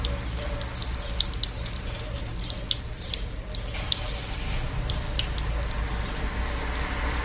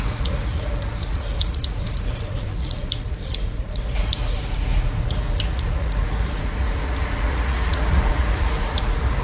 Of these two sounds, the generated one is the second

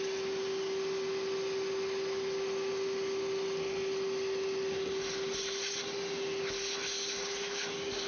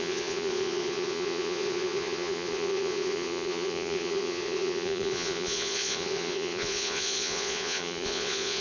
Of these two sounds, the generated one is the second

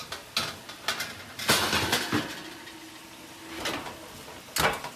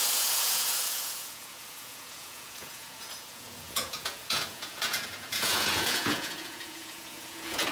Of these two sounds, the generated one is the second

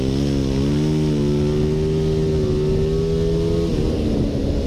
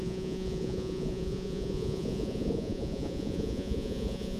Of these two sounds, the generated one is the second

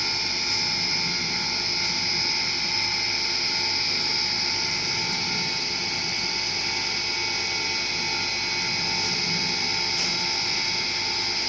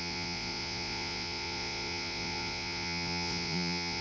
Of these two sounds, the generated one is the second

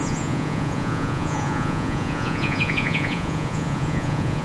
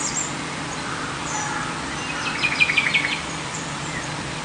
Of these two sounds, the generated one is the first